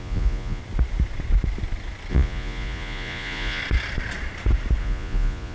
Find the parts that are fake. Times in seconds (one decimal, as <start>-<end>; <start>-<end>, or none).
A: 0.0-0.6; 2.1-3.6; 4.8-5.5